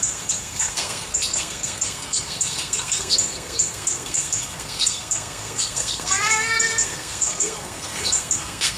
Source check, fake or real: fake